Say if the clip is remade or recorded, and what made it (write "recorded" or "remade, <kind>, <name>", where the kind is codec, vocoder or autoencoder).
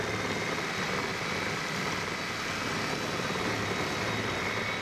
recorded